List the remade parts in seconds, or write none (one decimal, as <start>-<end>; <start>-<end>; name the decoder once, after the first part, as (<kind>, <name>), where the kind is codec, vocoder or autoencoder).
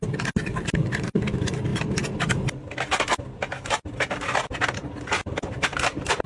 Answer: none